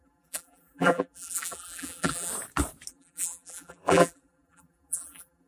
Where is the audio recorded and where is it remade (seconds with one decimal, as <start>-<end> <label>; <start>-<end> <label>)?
0.0-2.3 remade; 2.3-2.9 recorded; 2.9-5.5 remade